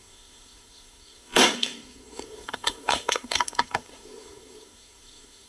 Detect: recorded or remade remade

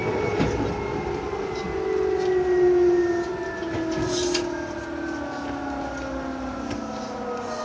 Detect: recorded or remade recorded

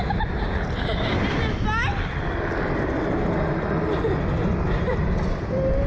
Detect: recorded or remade recorded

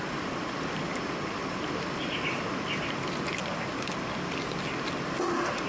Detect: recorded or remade recorded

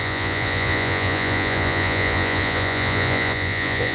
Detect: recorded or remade remade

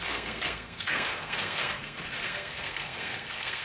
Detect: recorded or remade remade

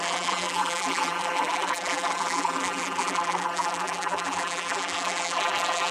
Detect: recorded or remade remade